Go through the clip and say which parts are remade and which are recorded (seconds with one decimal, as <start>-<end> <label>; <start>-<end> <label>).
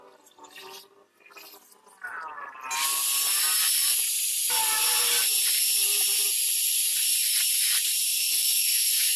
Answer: 0.0-8.1 recorded; 8.1-9.2 remade